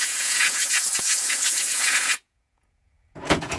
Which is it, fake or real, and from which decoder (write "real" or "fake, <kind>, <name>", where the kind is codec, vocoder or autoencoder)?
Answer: fake, vocoder, Vocos